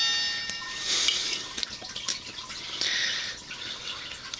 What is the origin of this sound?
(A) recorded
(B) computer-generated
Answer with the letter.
A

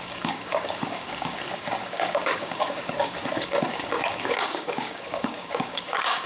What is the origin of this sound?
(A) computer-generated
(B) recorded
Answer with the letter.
A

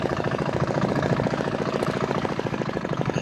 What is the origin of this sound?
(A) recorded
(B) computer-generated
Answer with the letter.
B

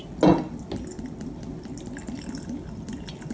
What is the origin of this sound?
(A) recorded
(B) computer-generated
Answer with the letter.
A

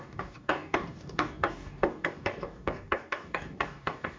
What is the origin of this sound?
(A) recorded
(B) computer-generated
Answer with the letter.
B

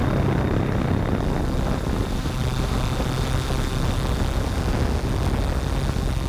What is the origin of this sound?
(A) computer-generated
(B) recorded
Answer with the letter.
B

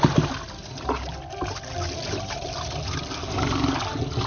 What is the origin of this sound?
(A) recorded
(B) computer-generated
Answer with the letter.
A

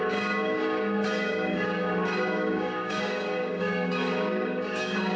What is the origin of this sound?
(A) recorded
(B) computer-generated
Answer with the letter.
B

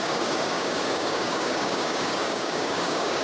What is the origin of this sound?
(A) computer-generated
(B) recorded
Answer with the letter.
A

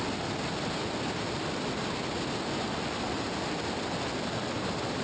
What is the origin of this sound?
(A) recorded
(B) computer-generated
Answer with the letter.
A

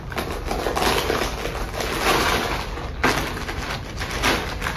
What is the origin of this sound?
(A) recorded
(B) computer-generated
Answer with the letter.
A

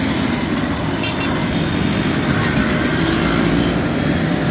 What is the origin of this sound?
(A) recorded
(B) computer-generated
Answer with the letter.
A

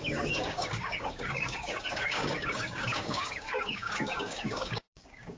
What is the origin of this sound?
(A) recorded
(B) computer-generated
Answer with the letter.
B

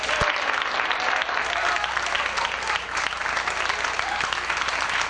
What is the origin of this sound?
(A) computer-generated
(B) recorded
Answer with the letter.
B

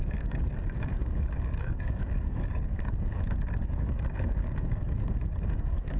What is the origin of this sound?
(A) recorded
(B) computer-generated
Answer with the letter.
B